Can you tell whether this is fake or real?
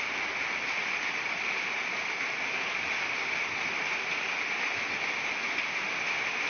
real